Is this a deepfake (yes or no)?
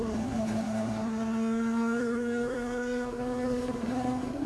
yes